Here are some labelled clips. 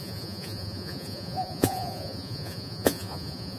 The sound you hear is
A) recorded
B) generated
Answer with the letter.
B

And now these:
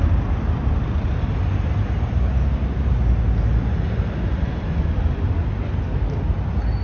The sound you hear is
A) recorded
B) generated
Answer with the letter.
A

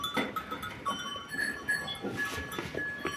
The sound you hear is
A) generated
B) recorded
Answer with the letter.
B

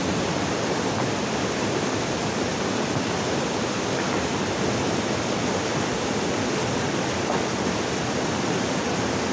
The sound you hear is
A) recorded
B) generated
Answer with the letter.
A